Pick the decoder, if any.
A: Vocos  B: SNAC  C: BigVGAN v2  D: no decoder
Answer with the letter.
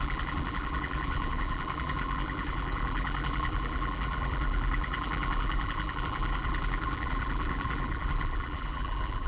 C